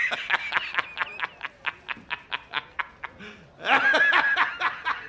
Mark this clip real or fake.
real